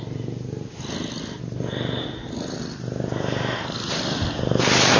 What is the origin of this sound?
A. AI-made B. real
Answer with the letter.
B